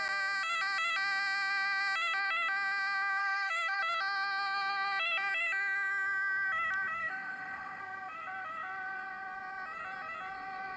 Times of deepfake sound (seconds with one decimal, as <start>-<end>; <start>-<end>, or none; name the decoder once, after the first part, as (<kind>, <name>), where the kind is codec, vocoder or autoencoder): 3.2-3.8 (autoencoder, DAC-VAE); 7.0-7.8